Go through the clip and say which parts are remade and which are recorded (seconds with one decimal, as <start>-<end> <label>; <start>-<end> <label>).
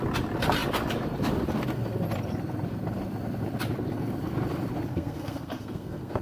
0.0-4.9 recorded; 4.9-6.2 remade